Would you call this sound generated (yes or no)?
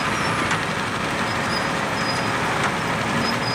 no